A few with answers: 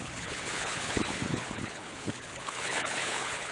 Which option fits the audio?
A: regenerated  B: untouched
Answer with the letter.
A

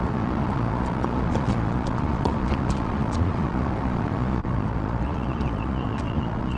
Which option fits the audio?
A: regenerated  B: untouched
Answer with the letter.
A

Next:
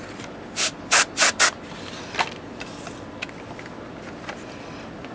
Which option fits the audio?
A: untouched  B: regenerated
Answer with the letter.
A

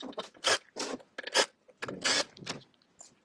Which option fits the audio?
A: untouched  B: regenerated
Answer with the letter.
A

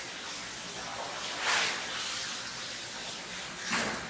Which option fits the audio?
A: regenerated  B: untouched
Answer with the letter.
B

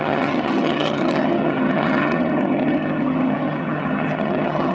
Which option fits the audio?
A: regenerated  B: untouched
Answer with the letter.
A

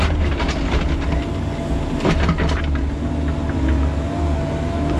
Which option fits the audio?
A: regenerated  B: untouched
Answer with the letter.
B